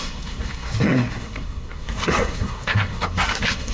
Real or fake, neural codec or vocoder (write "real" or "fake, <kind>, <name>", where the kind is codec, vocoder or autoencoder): fake, codec, SNAC